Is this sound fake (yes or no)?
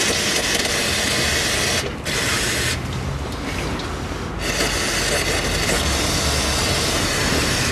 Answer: no